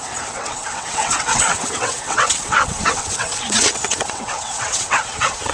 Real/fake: fake